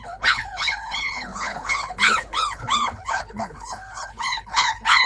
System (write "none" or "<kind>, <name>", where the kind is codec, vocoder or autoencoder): codec, HILCodec